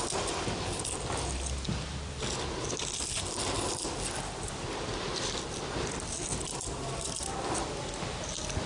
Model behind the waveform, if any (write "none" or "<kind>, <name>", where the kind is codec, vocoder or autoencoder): none